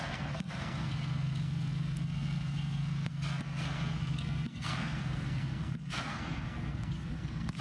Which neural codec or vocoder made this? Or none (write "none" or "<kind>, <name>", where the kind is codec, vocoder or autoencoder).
codec, SNAC